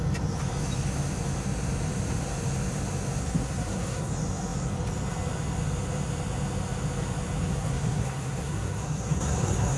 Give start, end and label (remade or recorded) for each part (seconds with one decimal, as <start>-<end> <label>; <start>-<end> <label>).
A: 0.0-3.2 recorded; 3.2-4.1 remade; 4.1-7.5 recorded; 7.5-9.8 remade